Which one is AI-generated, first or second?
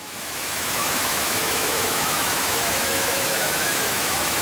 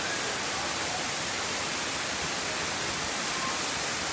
first